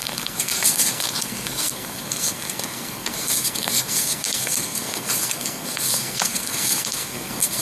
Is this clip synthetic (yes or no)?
yes